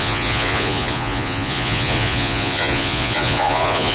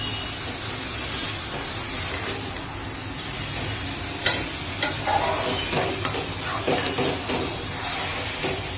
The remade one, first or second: first